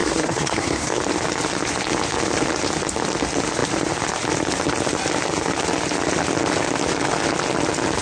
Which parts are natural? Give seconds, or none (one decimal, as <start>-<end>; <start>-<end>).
1.0-8.0